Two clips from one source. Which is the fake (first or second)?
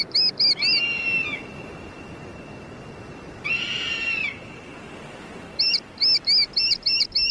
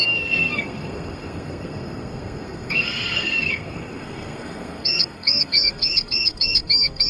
second